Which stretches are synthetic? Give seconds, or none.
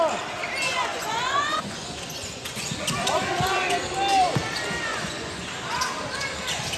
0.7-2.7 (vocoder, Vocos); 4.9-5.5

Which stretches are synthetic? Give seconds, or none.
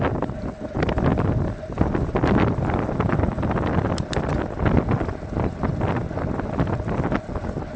none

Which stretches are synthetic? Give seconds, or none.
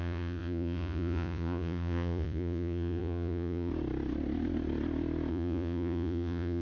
0.0-3.7 (vocoder, Vocos); 5.3-6.6